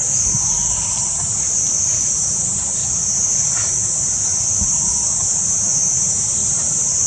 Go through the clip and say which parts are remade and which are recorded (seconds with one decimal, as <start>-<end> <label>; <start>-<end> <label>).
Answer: 0.0-2.8 remade; 2.8-3.9 recorded; 3.9-7.1 remade